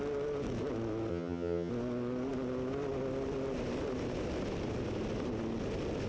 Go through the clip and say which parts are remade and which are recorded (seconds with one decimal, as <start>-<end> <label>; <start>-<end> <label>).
0.0-1.1 recorded; 1.1-1.7 remade; 1.7-6.1 recorded